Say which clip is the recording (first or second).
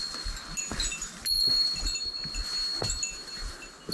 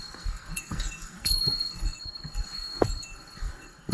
first